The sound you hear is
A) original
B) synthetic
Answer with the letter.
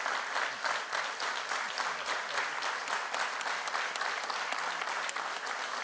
A